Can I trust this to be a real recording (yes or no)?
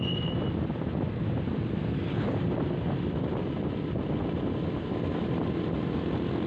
yes